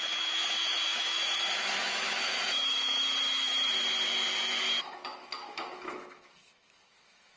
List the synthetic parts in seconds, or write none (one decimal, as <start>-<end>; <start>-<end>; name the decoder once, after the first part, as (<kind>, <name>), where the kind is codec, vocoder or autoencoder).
0.0-3.7 (autoencoder, DAC-VAE); 4.8-7.4